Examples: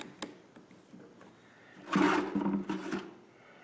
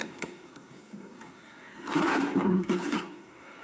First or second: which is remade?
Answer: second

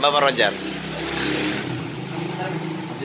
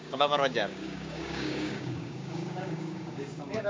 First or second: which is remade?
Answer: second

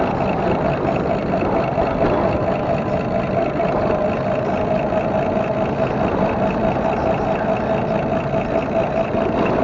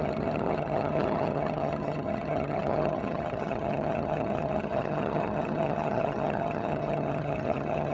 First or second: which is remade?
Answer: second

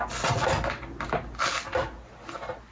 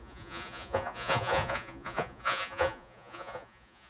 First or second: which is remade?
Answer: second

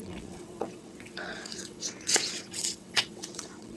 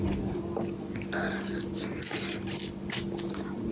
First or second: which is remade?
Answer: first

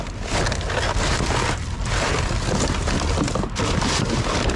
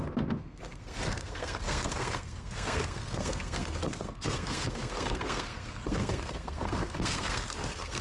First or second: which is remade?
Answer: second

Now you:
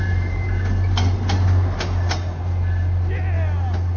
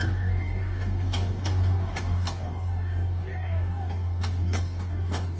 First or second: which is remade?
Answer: second